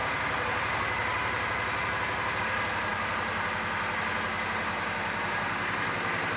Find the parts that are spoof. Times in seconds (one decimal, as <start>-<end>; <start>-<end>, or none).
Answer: none